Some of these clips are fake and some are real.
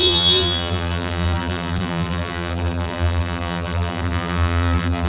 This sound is fake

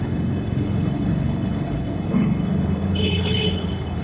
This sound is fake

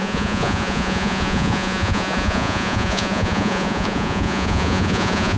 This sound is fake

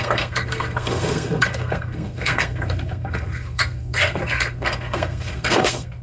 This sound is fake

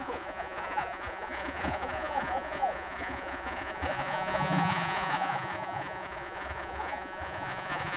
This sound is fake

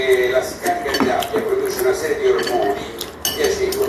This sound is real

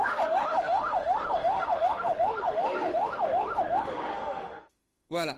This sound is fake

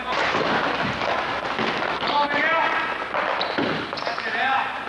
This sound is real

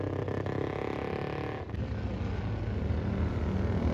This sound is real